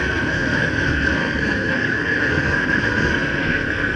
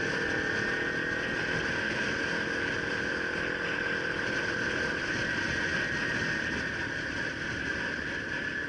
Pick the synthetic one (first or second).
first